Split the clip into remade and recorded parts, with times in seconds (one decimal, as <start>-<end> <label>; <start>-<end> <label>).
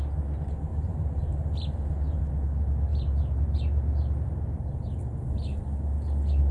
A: 0.0-0.7 recorded; 0.7-2.2 remade; 2.2-6.5 recorded